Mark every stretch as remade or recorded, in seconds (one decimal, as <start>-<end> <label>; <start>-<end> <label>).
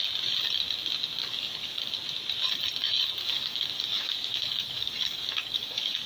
0.0-1.2 recorded; 1.2-1.9 remade; 1.9-3.2 recorded; 3.2-6.1 remade